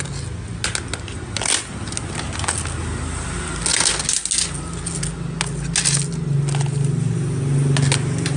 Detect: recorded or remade recorded